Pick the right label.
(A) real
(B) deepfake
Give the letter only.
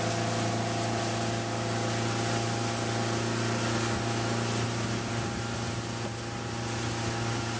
A